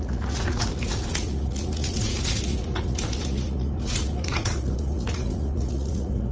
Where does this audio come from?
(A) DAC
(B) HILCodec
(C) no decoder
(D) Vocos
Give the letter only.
D